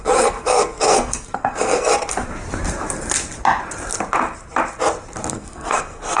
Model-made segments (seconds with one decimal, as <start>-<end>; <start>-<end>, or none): 0.0-1.9; 5.3-6.2

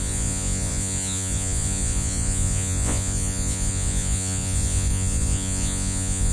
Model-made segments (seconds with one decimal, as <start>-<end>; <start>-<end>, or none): 0.0-6.3

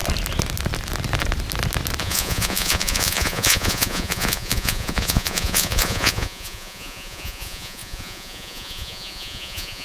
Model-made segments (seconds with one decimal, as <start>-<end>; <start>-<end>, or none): 2.0-9.8

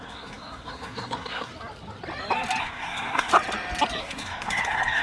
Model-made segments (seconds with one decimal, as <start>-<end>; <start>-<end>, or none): 0.0-1.5; 2.6-3.3; 4.0-5.0

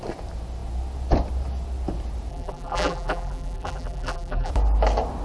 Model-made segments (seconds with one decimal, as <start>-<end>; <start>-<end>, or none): 2.3-4.5

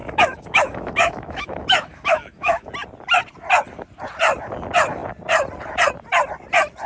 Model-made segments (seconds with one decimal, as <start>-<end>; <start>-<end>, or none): 0.0-2.7

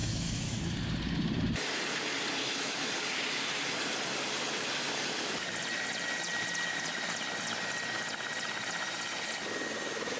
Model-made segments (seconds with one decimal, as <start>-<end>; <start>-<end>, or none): 0.0-0.6; 2.4-2.9

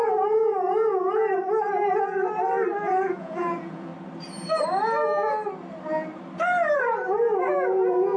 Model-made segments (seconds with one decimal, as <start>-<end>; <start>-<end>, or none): 0.0-1.2; 2.9-3.9; 7.5-8.2